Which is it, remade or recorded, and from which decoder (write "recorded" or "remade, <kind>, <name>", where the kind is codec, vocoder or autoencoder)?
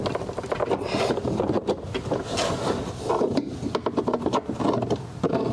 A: recorded